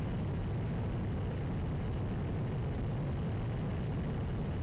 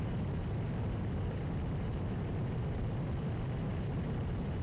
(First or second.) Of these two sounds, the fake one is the second